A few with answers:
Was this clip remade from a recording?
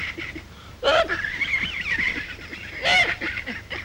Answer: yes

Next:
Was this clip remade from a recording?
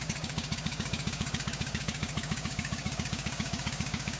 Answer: yes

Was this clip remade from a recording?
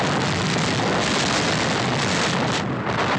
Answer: no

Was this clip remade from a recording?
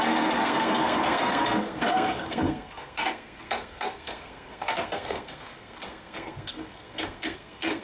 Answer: yes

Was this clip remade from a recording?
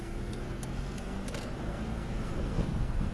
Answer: yes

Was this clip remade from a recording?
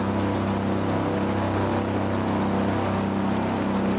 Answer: no